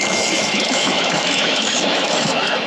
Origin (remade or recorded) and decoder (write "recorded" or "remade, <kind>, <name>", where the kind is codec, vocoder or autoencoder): remade, autoencoder, DAC-VAE